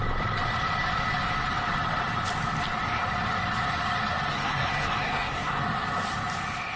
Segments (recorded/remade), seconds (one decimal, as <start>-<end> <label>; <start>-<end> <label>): 0.0-4.3 recorded; 4.3-5.6 remade; 5.6-6.8 recorded